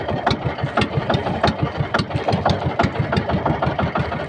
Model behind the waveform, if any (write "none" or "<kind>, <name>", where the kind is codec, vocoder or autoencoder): none